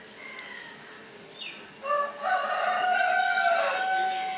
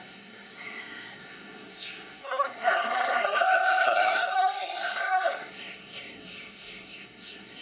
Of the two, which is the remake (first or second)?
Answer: second